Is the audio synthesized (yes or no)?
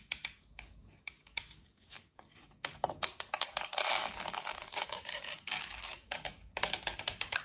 yes